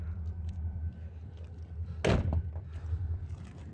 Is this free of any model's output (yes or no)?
yes